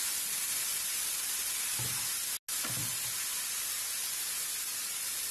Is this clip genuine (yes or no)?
yes